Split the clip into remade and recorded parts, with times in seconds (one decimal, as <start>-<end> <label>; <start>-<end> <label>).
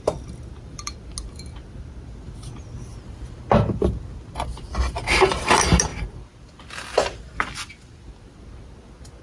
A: 0.0-9.2 recorded